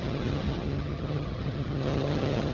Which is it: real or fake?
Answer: fake